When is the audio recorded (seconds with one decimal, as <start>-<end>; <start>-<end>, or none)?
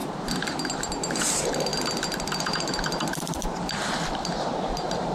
1.7-4.1